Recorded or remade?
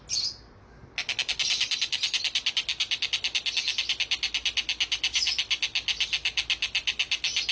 recorded